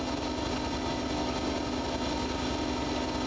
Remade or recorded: recorded